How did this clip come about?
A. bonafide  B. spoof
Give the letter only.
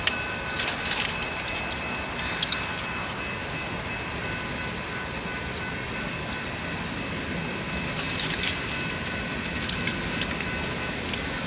A